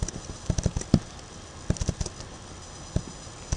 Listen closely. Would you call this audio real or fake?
real